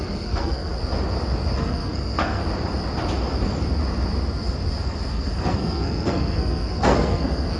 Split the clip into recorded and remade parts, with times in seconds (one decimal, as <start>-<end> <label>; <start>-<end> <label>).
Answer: 0.0-0.7 remade; 0.7-1.6 recorded; 1.6-2.4 remade; 2.4-5.1 recorded; 5.1-7.6 remade